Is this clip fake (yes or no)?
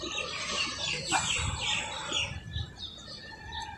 no